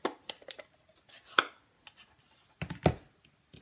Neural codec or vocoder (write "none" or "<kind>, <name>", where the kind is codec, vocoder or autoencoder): none